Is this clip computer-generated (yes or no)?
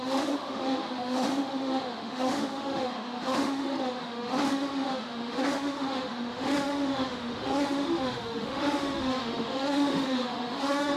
yes